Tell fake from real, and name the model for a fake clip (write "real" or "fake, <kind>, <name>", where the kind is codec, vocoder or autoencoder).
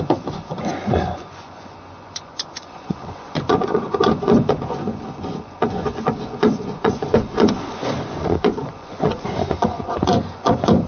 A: fake, vocoder, Vocos